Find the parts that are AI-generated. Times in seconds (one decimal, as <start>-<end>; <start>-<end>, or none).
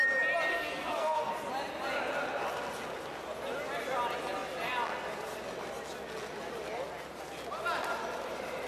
0.5-1.3